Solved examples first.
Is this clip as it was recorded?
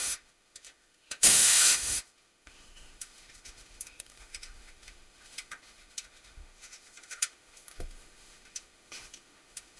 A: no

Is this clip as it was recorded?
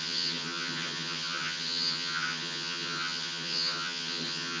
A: no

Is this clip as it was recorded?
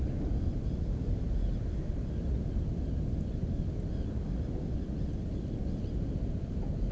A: yes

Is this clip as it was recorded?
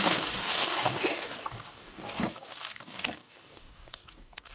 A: no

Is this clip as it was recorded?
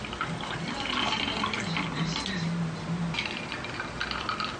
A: yes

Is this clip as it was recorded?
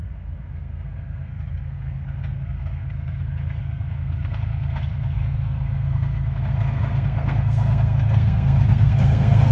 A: no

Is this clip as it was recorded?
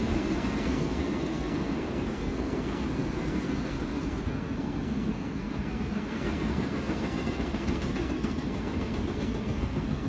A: no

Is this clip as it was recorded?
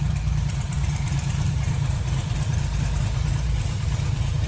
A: no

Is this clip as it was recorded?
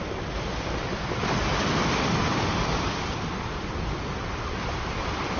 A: yes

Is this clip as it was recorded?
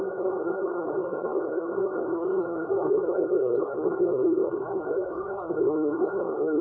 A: no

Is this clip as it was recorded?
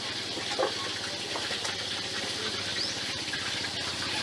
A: yes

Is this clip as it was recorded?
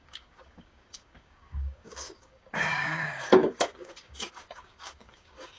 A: no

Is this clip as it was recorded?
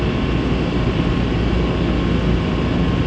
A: yes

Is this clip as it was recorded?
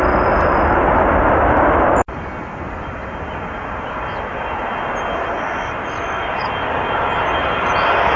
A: yes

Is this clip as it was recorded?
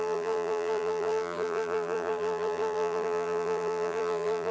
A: no